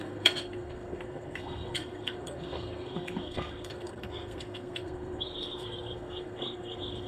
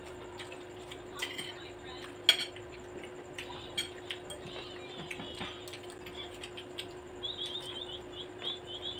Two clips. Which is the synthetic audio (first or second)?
first